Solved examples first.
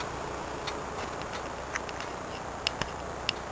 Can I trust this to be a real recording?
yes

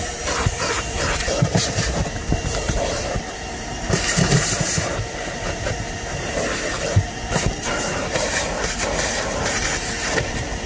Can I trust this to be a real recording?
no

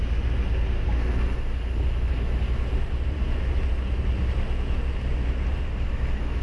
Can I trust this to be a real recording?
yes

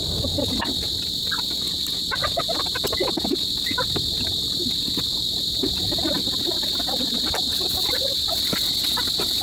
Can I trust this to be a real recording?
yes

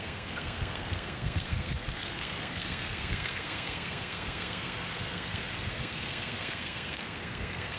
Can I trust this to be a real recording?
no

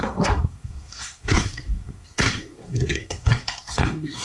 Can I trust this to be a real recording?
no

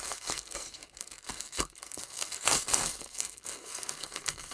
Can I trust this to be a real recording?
no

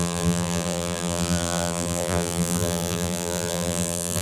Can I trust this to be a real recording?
no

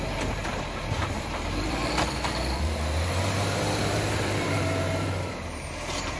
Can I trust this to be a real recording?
no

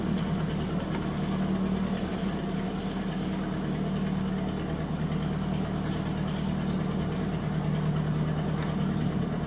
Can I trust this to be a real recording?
yes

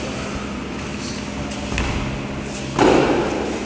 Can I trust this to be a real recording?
yes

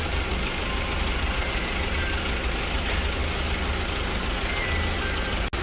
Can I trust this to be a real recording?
yes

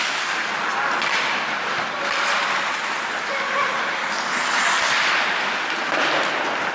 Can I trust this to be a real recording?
yes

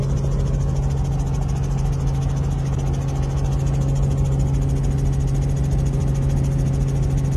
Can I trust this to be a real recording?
yes